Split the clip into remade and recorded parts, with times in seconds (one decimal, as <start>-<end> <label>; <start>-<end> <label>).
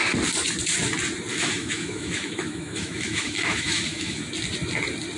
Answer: 0.0-1.3 recorded; 1.3-4.3 remade; 4.3-5.2 recorded